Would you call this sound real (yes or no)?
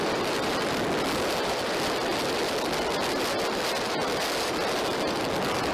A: yes